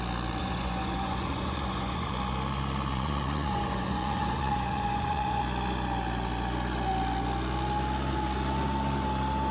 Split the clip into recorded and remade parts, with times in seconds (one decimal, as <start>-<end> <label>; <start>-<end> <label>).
0.0-0.4 recorded; 0.4-2.1 remade; 2.1-2.9 recorded; 2.9-5.4 remade; 5.4-9.5 recorded